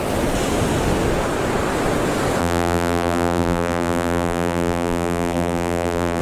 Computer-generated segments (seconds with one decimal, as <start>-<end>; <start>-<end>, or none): 2.4-6.2